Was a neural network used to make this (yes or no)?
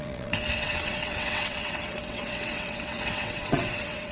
yes